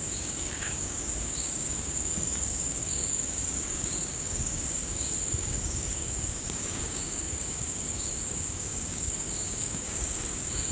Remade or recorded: remade